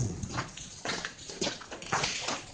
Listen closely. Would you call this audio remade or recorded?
remade